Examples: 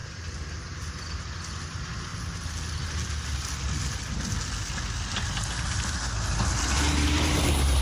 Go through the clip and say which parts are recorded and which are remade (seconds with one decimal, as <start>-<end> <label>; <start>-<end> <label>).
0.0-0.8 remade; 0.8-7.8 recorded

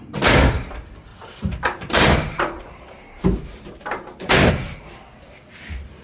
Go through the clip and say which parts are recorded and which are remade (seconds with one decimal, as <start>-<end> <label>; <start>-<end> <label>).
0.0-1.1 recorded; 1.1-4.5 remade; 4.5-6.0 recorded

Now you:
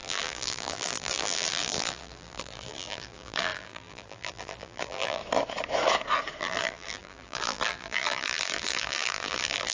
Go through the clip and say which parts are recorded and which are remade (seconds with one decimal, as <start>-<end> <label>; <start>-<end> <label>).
0.0-5.2 remade; 5.2-6.4 recorded; 6.4-9.7 remade